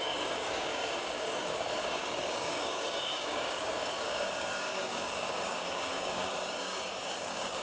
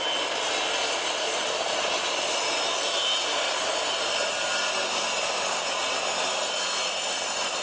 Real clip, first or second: second